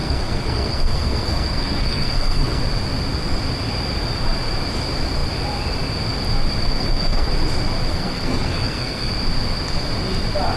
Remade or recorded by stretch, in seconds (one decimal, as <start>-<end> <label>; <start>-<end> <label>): 0.0-2.6 remade; 2.6-6.6 recorded; 6.6-7.3 remade; 7.3-7.9 recorded; 7.9-9.1 remade; 9.1-10.6 recorded